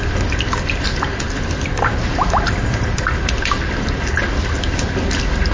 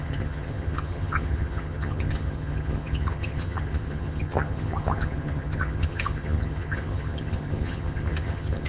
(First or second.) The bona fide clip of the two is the first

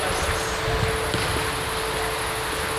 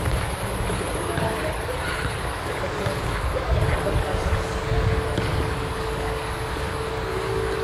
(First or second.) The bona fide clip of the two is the first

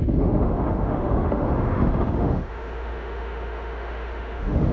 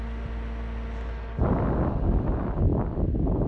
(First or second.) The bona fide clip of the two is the second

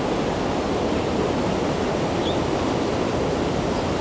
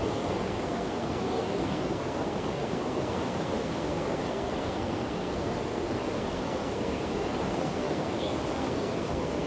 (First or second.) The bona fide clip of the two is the first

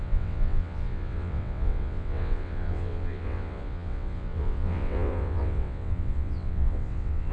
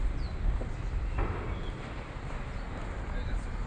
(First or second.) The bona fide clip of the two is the second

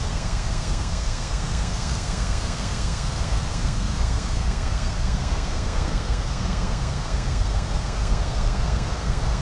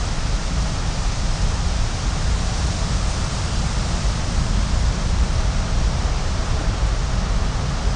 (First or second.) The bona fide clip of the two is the second